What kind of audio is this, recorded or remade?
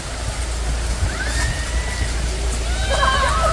recorded